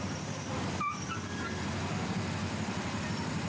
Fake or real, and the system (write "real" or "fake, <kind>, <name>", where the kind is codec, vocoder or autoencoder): real